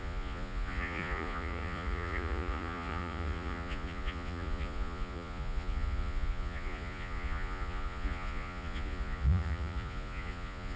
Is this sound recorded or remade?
remade